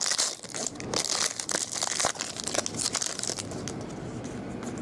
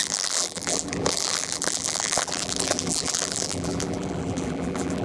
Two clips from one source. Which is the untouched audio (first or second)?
first